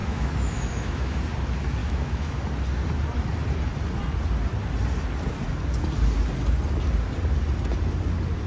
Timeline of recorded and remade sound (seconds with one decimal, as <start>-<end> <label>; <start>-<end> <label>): 0.0-1.2 remade; 1.2-1.8 recorded; 1.8-2.4 remade; 2.4-8.5 recorded